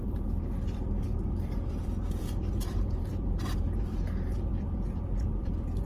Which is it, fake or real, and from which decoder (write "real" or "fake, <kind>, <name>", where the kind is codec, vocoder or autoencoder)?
fake, vocoder, BigVGAN v2